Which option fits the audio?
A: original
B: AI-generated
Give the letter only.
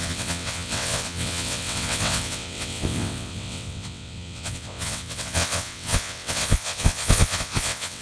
B